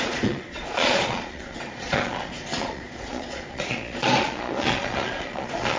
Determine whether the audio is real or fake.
fake